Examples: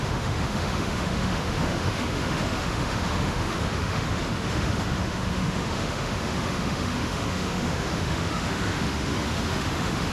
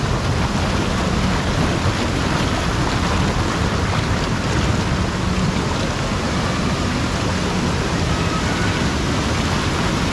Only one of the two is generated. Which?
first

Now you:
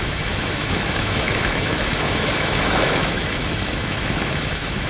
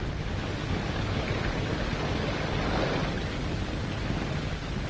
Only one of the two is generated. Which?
first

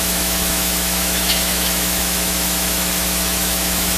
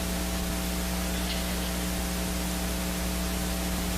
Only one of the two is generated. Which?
first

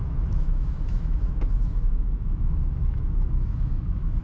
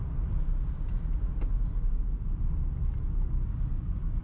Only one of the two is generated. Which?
first